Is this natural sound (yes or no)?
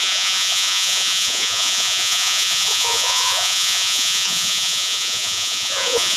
no